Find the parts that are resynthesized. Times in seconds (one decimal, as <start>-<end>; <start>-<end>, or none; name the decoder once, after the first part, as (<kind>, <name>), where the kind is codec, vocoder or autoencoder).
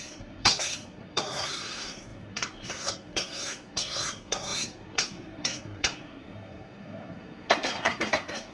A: 0.0-8.5 (codec, SNAC)